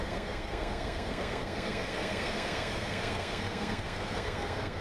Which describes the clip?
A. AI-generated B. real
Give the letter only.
A